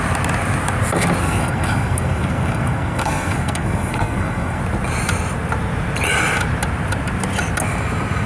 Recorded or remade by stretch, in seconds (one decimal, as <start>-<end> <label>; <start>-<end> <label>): 0.0-1.2 recorded; 1.2-4.6 remade; 4.6-8.3 recorded